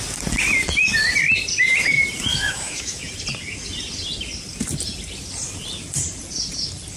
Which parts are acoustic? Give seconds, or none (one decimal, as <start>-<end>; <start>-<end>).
0.0-2.3; 3.1-7.0

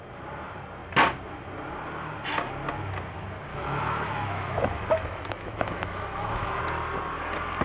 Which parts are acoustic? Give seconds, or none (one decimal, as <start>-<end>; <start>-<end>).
0.0-3.5; 6.6-7.6

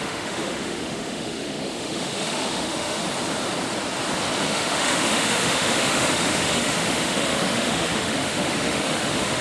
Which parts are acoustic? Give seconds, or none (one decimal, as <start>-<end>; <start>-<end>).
3.0-4.5

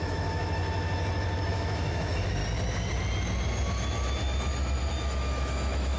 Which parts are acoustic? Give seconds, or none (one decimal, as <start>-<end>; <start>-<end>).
0.6-1.5; 2.4-4.9

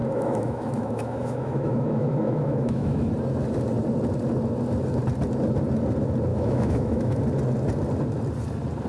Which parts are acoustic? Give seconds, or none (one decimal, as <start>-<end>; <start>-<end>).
3.1-6.3; 7.2-8.9

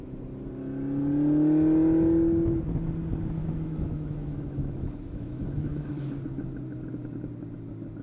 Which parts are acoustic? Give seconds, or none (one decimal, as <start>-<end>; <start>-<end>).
0.0-3.4; 6.0-8.0